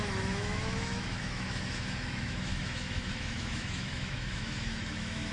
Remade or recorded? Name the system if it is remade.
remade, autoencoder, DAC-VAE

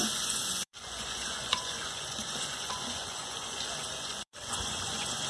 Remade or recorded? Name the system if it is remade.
remade, vocoder, Vocos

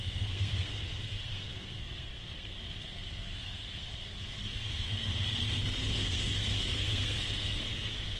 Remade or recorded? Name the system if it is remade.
remade, codec, SNAC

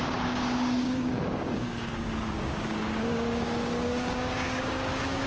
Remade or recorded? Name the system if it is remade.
remade, codec, DAC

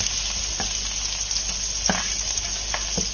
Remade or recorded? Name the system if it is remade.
recorded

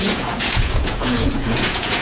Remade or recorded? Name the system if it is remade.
remade, vocoder, Vocos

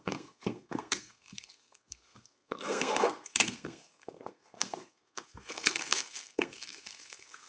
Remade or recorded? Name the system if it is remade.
remade, codec, SNAC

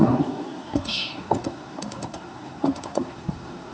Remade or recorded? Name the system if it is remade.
remade, codec, SNAC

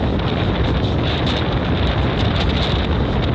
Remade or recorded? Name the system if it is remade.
recorded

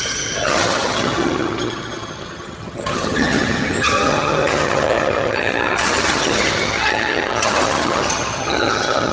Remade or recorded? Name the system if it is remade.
remade, vocoder, HiFi-GAN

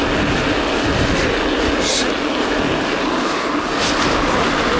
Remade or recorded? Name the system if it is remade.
recorded